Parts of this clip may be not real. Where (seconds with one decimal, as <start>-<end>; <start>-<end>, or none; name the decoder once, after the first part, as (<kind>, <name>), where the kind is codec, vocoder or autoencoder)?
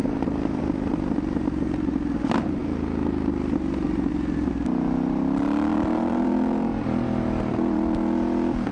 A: 0.0-0.6 (vocoder, BigVGAN v2); 5.7-7.5